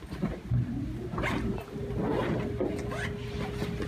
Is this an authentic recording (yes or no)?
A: yes